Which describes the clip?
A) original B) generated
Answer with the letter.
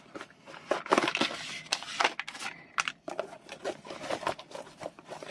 A